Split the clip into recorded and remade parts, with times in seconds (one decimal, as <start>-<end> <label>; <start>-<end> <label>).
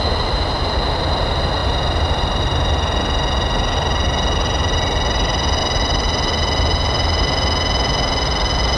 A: 0.0-1.6 recorded; 1.6-2.4 remade; 2.4-8.8 recorded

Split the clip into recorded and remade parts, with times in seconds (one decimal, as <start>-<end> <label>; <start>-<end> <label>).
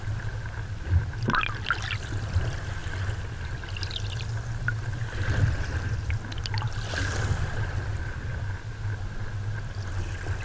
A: 0.0-10.4 recorded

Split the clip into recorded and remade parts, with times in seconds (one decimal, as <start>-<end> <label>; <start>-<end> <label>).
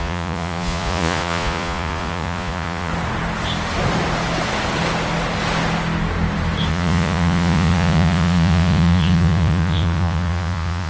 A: 0.0-2.9 remade; 2.9-6.7 recorded; 6.7-10.9 remade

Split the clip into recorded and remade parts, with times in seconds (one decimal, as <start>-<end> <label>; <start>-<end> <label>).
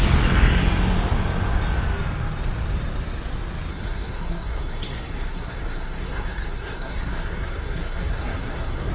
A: 0.0-3.7 recorded; 3.7-8.9 remade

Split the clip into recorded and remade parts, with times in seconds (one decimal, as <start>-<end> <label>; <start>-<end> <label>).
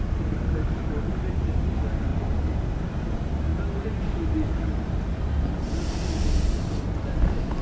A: 0.0-7.6 recorded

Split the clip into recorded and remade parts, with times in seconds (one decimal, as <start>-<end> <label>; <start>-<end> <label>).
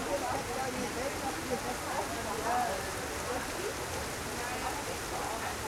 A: 0.0-0.7 remade; 0.7-5.7 recorded